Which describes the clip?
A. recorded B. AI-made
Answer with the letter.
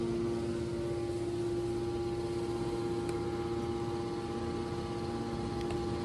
A